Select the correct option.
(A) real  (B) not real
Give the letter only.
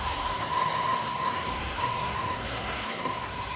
B